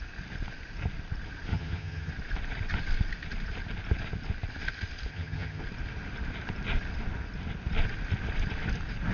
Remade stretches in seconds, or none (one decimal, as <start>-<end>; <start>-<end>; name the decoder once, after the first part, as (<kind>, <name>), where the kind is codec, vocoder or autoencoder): 1.5-2.1 (vocoder, HiFi-GAN); 5.1-5.6